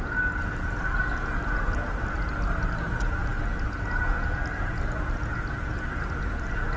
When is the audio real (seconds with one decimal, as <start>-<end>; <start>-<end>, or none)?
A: 0.0-6.8